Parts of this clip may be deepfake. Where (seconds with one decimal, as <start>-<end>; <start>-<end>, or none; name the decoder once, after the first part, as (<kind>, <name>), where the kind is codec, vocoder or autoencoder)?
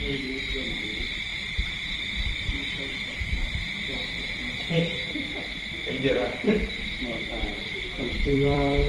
0.0-8.9 (vocoder, BigVGAN v2)